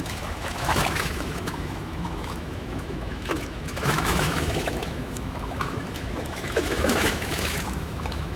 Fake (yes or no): yes